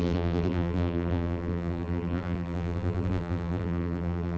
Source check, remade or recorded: remade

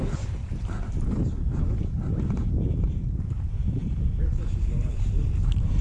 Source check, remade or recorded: remade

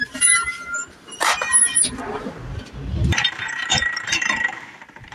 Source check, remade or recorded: remade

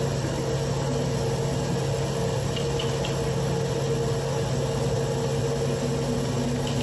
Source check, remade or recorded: recorded